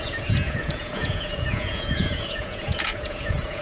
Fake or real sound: fake